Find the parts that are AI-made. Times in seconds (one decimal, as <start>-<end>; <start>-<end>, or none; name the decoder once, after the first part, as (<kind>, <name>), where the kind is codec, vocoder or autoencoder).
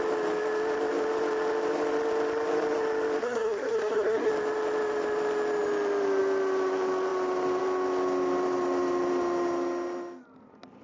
3.2-4.3 (codec, SNAC)